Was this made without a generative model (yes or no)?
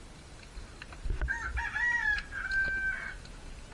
yes